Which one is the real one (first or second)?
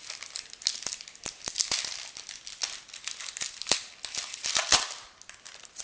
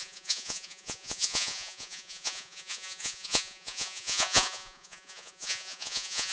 first